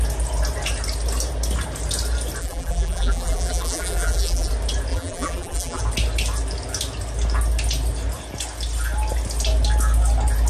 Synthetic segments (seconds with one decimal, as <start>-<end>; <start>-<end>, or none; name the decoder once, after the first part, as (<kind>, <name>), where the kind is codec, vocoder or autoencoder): 2.4-4.5 (vocoder, BigVGAN v2); 4.9-5.8